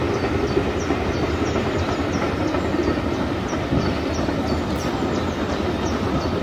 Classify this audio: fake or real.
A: real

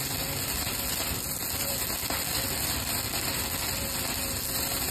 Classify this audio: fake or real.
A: real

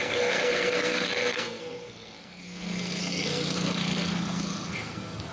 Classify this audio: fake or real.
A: fake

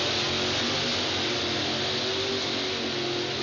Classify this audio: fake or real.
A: real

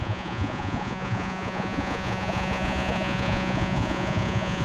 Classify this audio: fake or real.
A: fake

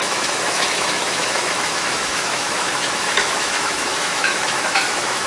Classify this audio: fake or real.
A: fake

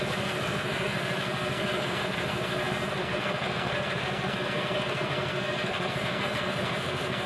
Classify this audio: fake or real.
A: fake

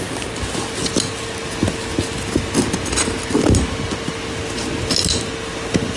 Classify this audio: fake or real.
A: real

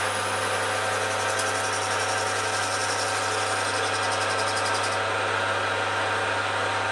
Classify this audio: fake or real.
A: fake